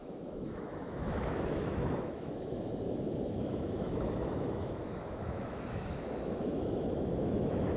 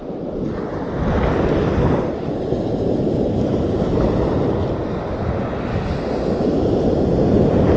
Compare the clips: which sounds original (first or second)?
second